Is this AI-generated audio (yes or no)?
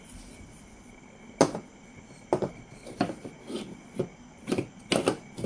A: no